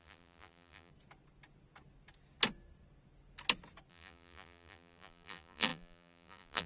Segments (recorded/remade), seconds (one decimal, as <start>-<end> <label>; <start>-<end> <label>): 0.0-0.9 remade; 0.9-3.9 recorded; 3.9-6.7 remade